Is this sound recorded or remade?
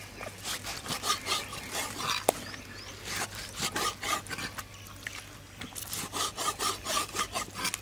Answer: recorded